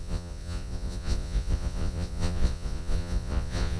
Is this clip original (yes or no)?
no